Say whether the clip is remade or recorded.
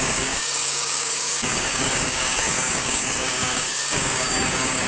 remade